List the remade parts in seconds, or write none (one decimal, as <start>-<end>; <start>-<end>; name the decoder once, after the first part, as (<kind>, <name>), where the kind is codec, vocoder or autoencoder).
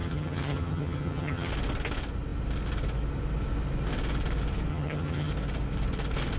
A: 0.0-1.5 (vocoder, HiFi-GAN); 4.7-5.3